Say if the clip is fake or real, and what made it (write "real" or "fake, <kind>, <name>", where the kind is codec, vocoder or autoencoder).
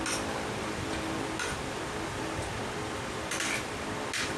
real